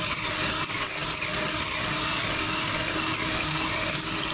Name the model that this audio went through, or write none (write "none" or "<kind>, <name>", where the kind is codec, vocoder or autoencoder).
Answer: none